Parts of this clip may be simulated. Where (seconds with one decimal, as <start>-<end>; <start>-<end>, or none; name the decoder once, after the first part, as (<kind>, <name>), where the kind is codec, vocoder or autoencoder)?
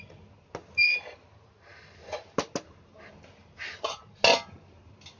none